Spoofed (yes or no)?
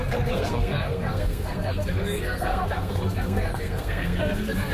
yes